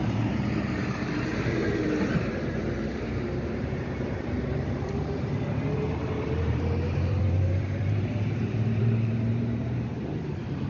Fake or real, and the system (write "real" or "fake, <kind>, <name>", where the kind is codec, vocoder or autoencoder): fake, vocoder, BigVGAN v2